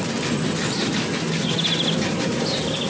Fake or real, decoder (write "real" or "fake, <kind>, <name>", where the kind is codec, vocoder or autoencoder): real